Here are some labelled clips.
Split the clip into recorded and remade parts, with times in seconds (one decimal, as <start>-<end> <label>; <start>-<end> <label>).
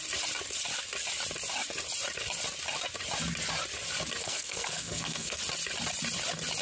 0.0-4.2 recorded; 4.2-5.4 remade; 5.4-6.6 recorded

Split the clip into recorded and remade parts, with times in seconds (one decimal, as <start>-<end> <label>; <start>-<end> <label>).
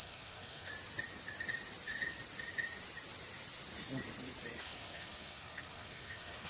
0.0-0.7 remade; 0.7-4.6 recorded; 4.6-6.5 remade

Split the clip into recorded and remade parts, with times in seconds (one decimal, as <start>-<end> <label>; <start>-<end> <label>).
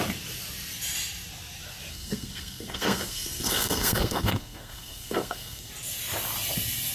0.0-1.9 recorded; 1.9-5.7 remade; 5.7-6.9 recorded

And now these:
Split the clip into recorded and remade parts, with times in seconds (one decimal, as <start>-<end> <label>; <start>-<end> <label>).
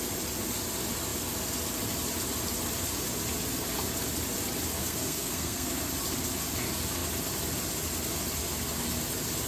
0.0-4.8 recorded; 4.8-5.7 remade; 5.7-9.5 recorded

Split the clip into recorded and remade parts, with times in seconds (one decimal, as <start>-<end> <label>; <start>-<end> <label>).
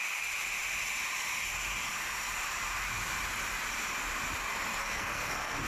0.0-4.8 recorded; 4.8-5.7 remade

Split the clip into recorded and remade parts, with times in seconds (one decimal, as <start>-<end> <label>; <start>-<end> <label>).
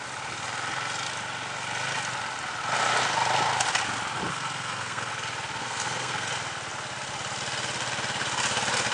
0.0-4.3 recorded; 4.3-5.1 remade; 5.1-5.6 recorded; 5.6-6.3 remade; 6.3-8.9 recorded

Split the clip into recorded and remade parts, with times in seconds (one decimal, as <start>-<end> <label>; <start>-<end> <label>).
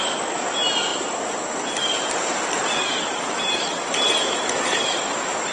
0.0-5.5 recorded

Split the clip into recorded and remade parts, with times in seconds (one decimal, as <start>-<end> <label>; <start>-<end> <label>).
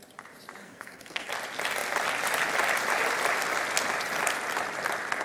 0.0-0.6 recorded; 0.6-1.3 remade; 1.3-5.2 recorded